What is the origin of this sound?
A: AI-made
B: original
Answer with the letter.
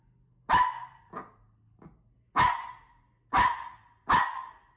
B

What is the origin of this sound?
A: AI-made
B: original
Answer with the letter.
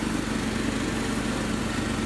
B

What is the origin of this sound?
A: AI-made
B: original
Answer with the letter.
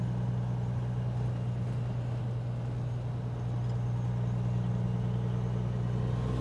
B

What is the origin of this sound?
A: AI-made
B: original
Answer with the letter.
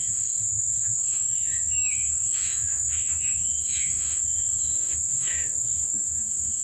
A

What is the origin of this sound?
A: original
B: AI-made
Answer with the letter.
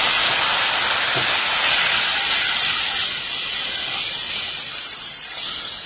A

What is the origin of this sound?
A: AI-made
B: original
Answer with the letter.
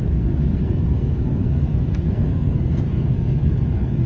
A